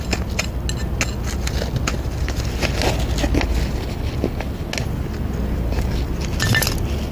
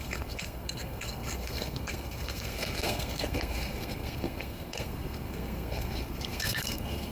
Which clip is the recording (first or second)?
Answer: first